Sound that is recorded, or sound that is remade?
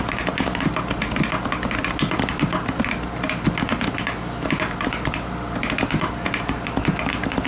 recorded